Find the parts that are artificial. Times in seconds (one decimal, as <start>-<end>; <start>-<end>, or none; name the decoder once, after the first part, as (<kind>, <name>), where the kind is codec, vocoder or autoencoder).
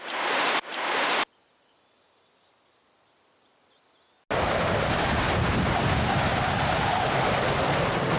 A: none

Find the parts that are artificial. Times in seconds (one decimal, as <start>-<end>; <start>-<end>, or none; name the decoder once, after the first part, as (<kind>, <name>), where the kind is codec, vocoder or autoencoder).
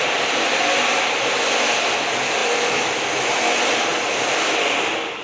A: none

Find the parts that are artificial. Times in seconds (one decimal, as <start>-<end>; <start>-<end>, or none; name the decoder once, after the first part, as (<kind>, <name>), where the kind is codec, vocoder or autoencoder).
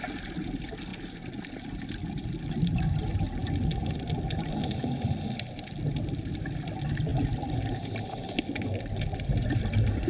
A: none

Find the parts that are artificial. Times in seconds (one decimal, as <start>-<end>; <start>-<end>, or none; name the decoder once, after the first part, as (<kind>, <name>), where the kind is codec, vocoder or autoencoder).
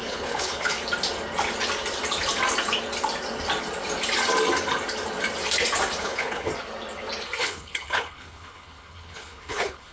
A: 0.0-0.8 (codec, HILCodec); 6.0-6.5; 7.4-9.9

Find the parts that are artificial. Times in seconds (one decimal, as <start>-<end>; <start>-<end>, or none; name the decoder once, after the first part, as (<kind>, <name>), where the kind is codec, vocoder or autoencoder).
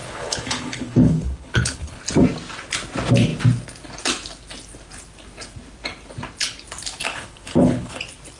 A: 0.0-2.0 (codec, HILCodec); 7.0-8.0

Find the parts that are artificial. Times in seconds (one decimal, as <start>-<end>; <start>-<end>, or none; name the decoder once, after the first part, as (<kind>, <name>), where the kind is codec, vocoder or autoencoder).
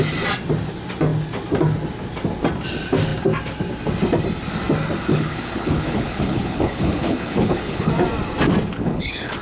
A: 5.1-7.9 (codec, HILCodec); 8.7-9.4